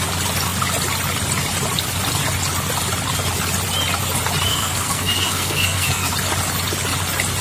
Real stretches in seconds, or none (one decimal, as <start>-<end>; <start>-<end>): 0.0-4.5; 6.1-7.4